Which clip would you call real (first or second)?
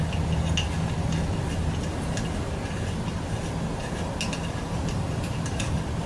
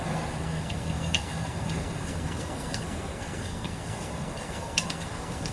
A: first